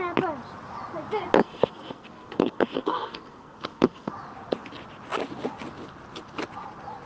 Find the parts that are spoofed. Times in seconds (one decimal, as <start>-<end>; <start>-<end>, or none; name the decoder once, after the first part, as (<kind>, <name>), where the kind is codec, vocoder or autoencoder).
1.4-4.1 (codec, SNAC)

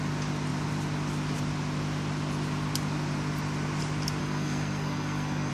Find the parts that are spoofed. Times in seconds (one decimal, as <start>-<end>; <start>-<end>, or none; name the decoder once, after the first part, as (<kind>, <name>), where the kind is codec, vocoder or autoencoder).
4.2-5.5 (codec, SNAC)

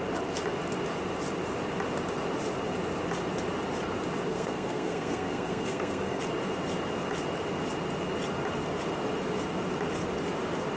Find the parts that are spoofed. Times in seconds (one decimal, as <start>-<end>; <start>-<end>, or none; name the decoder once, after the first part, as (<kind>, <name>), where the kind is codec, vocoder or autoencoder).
4.3-6.2 (codec, SNAC)

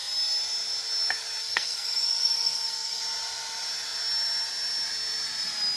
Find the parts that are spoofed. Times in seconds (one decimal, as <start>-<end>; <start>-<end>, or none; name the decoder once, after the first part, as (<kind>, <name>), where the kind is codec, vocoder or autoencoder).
1.4-3.0 (codec, SNAC)

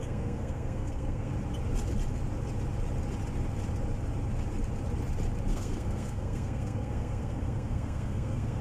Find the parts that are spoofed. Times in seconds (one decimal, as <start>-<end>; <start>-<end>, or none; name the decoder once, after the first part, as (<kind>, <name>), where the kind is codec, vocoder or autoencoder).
0.0-1.3 (codec, SNAC); 5.5-8.6